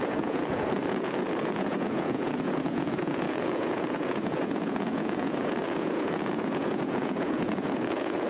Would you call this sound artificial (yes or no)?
yes